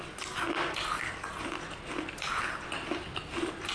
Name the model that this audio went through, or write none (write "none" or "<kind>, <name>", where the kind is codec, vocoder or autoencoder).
none